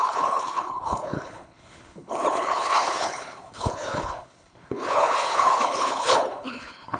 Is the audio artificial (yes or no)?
yes